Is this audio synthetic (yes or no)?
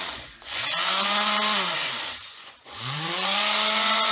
yes